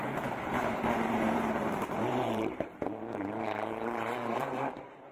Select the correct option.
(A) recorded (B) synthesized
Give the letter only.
B